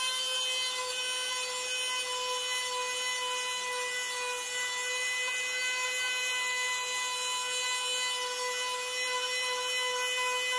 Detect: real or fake real